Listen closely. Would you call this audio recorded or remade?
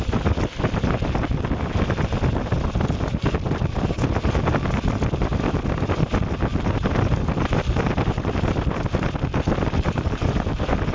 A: recorded